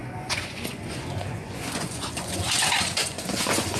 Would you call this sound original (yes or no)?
no